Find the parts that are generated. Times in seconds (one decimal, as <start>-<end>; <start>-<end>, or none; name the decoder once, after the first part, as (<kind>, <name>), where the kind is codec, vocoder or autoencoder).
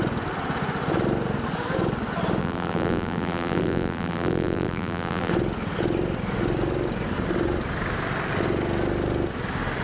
2.4-5.3 (vocoder, BigVGAN v2)